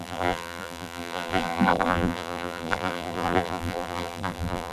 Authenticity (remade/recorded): remade